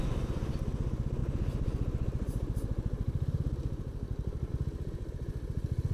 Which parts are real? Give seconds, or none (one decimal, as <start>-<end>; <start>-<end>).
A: 0.0-1.2; 4.5-5.9